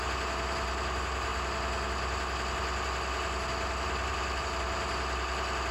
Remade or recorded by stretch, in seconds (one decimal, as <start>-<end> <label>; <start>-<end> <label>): 0.0-5.7 recorded